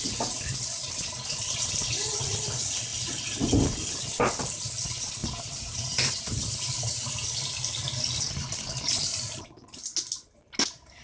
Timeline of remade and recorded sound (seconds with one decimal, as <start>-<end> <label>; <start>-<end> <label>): 0.0-5.2 recorded; 5.2-7.1 remade; 7.1-11.0 recorded